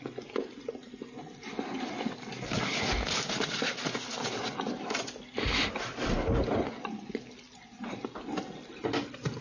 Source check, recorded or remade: recorded